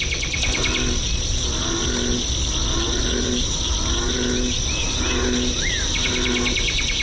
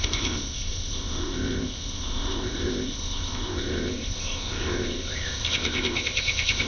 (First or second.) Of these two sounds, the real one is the first